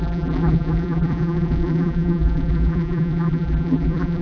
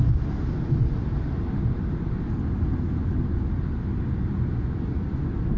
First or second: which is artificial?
first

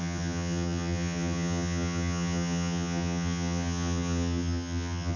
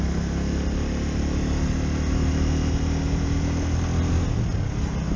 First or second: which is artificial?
first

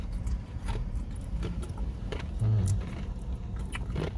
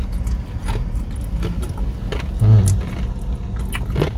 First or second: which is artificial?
first